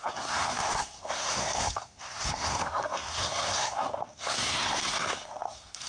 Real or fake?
fake